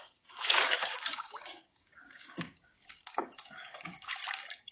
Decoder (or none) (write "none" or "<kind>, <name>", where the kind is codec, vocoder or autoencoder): codec, DAC